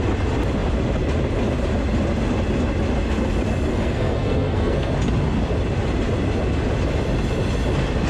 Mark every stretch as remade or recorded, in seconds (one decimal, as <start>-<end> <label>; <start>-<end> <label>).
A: 0.0-3.7 recorded; 3.7-4.9 remade; 4.9-8.1 recorded